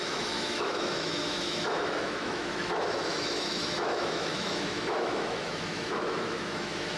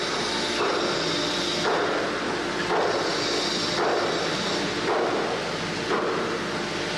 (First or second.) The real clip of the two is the second